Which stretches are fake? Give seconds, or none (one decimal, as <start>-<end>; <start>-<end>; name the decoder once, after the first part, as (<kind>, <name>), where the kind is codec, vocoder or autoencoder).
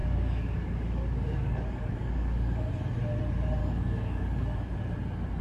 0.0-2.7 (codec, DAC); 3.6-4.8